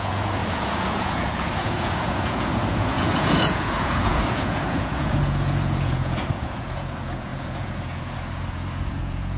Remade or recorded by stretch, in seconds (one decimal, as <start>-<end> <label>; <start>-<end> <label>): 0.0-9.4 remade